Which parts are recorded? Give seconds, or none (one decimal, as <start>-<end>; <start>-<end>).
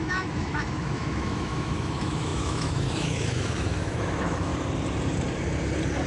4.5-6.1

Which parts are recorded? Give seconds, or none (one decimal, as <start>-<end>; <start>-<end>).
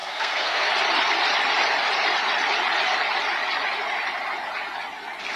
0.7-5.4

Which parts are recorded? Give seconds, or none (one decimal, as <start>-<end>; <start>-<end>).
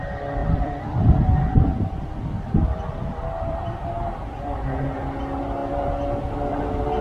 0.0-0.4; 3.8-7.0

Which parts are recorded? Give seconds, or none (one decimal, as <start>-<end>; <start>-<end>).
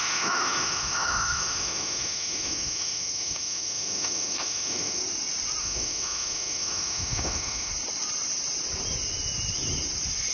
5.0-5.6; 7.7-10.3